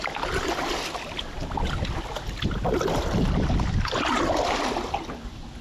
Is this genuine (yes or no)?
yes